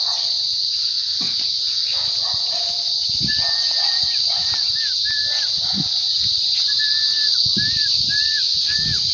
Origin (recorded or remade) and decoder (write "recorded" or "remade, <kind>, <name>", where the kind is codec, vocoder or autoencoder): recorded